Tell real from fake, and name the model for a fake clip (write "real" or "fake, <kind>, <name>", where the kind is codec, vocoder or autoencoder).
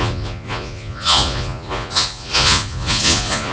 fake, vocoder, Vocos